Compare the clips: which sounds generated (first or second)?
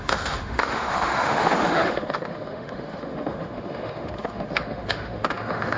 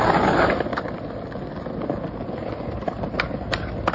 first